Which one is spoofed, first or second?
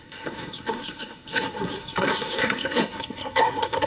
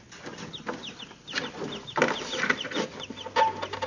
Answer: first